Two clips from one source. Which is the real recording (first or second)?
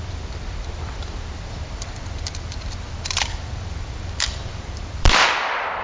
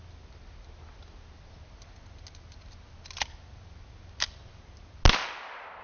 second